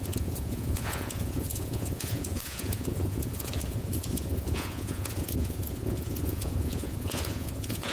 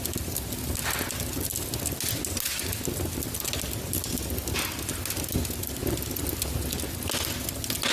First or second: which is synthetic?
first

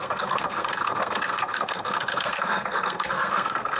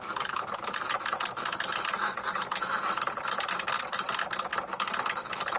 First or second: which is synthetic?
first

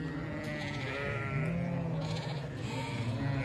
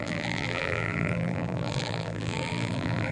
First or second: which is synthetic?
second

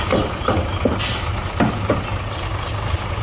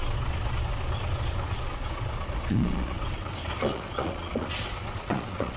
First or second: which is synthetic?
second